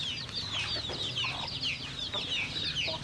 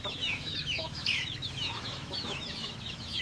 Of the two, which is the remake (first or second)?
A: second